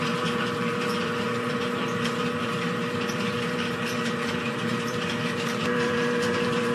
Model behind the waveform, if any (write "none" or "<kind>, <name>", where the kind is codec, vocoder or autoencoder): vocoder, BigVGAN v2